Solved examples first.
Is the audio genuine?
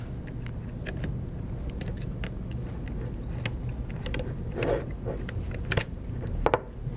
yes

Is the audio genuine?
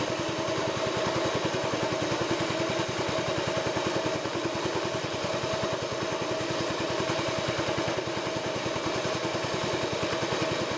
yes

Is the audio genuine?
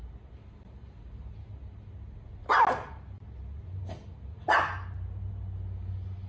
yes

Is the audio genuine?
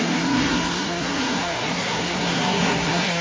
no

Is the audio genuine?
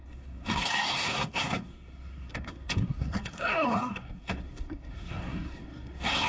no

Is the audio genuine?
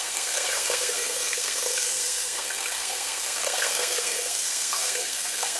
no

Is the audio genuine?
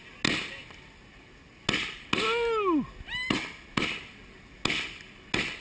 yes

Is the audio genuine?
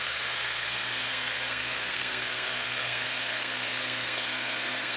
no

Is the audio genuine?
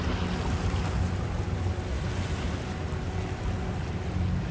yes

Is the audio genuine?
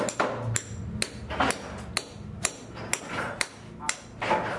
yes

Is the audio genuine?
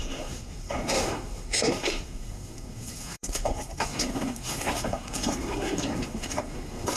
no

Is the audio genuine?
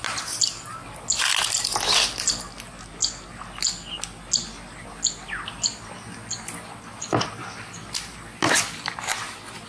yes